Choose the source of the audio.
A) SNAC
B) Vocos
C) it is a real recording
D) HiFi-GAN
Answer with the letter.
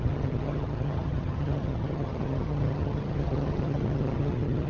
D